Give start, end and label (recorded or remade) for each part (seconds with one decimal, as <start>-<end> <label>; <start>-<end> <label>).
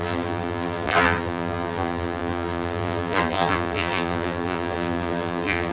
0.0-5.7 remade